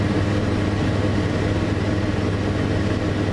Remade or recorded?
recorded